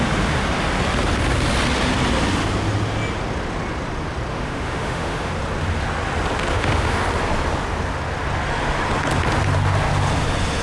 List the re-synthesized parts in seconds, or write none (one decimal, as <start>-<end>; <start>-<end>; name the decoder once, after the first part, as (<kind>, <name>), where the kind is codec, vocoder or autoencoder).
4.3-5.3 (autoencoder, DAC-VAE); 6.5-7.0